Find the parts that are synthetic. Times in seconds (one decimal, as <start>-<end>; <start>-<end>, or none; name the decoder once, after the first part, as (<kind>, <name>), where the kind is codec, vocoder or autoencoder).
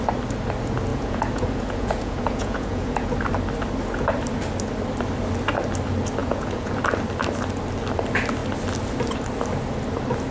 0.9-3.1 (vocoder, Vocos); 6.2-6.8